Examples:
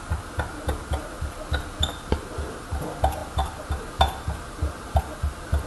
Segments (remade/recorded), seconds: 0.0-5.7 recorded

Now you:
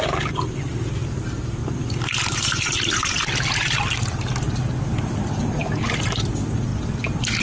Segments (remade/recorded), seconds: 0.0-7.4 recorded

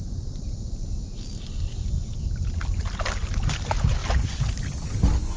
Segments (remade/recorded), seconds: 0.0-5.4 recorded

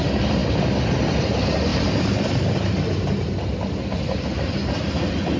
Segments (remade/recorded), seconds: 0.0-5.4 recorded

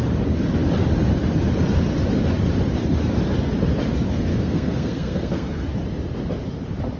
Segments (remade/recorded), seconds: 0.0-4.3 recorded; 4.3-5.7 remade; 5.7-7.0 recorded

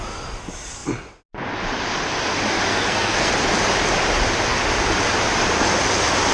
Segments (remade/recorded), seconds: 0.0-2.7 recorded; 2.7-3.3 remade; 3.3-6.3 recorded